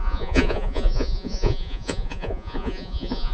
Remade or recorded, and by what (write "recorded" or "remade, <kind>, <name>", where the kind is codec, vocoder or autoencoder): remade, vocoder, Vocos